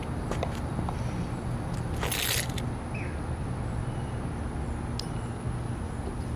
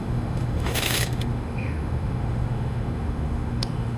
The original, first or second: first